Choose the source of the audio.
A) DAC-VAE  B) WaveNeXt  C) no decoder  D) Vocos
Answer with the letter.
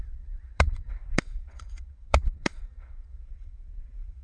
B